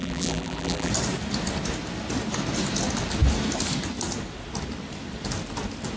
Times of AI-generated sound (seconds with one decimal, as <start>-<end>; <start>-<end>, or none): 0.0-0.9